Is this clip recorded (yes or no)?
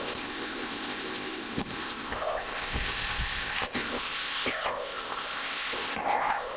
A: no